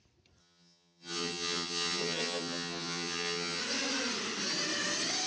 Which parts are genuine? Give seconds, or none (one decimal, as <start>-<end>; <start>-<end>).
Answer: 0.0-0.4; 3.6-5.3